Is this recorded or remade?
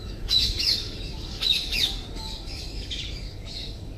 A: remade